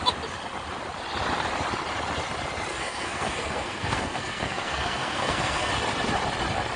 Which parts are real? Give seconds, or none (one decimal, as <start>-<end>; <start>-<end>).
0.0-2.7; 5.7-6.8